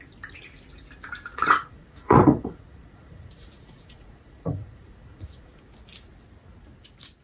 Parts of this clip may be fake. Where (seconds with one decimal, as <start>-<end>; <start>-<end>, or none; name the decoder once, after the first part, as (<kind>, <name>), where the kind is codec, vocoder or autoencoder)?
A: 1.3-5.6 (vocoder, Vocos)